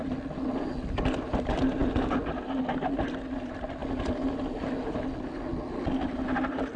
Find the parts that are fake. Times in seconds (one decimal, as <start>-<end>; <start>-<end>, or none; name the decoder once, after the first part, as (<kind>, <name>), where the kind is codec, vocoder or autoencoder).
none